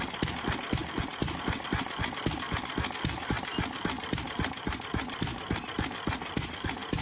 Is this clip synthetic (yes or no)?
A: no